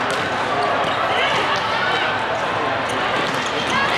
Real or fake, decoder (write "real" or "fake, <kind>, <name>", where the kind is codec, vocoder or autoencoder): real